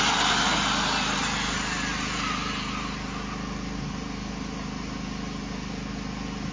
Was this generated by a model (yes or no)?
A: no